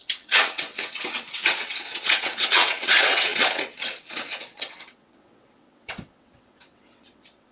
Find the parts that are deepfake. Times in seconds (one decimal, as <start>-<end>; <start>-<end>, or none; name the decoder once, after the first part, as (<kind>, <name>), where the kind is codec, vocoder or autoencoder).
0.0-7.5 (vocoder, WaveNeXt)